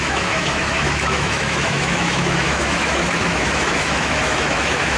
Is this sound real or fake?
fake